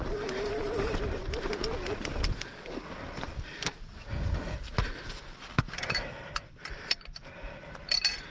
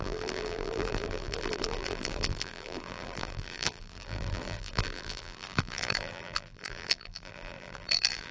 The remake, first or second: second